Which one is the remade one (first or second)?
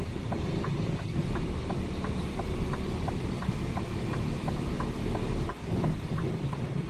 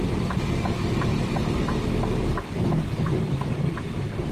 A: first